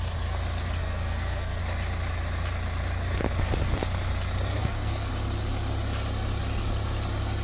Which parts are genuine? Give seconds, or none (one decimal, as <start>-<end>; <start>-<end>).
0.0-0.8; 1.6-4.6; 5.1-7.4